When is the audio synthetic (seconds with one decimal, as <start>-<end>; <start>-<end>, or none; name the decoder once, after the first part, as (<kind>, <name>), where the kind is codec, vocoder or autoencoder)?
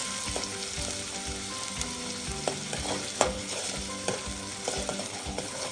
3.2-3.6 (codec, HILCodec); 5.0-5.7